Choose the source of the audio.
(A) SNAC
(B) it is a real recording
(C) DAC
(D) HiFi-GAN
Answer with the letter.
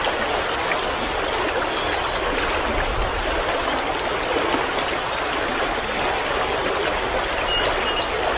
B